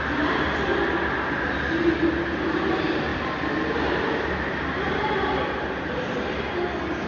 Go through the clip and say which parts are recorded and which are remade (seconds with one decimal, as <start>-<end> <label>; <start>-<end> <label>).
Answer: 0.0-7.1 recorded